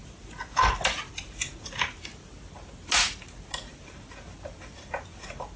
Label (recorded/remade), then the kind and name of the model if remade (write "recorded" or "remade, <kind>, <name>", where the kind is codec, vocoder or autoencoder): recorded